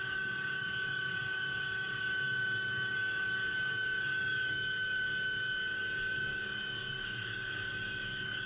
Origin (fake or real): fake